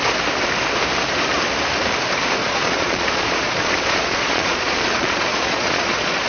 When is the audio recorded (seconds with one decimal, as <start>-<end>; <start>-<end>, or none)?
0.0-2.4